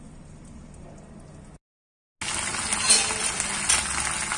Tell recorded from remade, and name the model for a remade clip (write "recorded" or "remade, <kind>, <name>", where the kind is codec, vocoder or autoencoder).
recorded